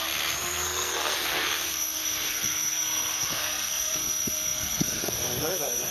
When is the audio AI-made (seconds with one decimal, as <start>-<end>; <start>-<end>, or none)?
0.0-5.9